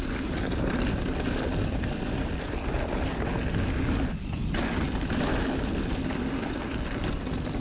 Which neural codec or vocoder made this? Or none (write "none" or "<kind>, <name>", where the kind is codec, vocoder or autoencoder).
none